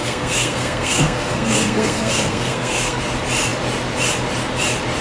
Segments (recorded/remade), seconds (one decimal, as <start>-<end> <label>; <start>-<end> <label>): 0.0-3.0 remade; 3.0-5.0 recorded